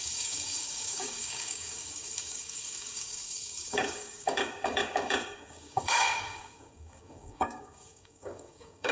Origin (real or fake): fake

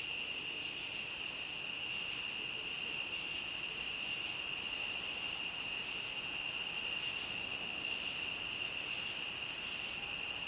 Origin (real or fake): real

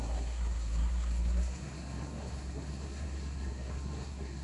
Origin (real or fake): fake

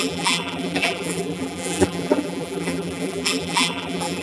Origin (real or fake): fake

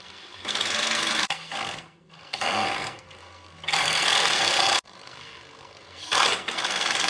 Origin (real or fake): fake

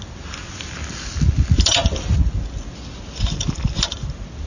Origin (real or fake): real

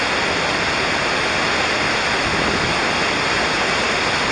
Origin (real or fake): real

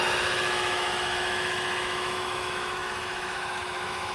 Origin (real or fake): fake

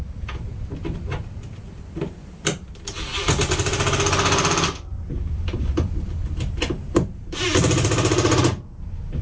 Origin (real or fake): real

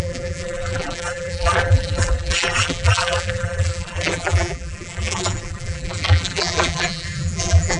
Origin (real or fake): fake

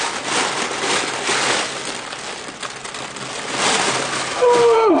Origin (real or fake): real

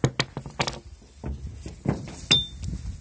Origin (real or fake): real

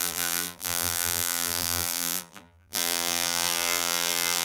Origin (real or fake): fake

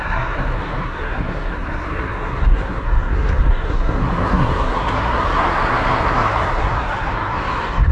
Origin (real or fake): fake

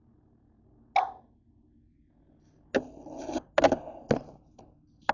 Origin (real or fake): real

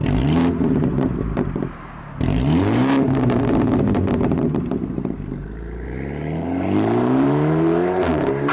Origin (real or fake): fake